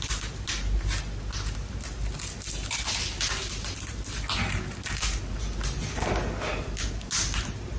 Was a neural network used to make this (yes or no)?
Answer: no